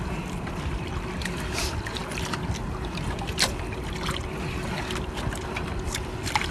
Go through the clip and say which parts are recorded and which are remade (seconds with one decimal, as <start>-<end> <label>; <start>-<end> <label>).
0.0-6.5 recorded